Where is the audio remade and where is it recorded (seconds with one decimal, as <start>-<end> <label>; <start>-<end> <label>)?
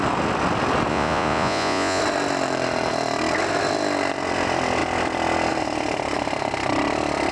0.0-0.9 recorded; 0.9-2.0 remade; 2.0-7.3 recorded